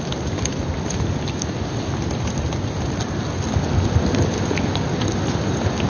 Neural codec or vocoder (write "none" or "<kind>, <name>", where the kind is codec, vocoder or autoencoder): none